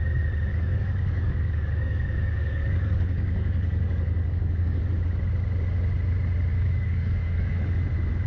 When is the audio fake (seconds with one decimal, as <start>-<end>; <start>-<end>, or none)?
0.5-4.8; 6.5-7.8